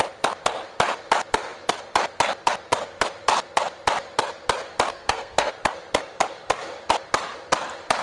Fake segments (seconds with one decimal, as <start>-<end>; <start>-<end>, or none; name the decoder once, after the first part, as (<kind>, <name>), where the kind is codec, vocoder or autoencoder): 4.9-5.5 (codec, SNAC)